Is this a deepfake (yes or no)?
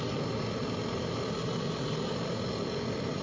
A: no